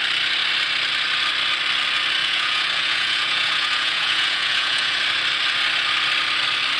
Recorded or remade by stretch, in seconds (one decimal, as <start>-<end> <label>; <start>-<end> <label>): 0.0-2.2 recorded; 2.2-5.0 remade; 5.0-6.8 recorded